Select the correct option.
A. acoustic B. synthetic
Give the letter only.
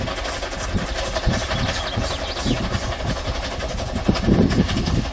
A